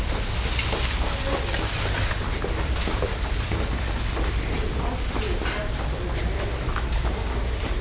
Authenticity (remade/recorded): recorded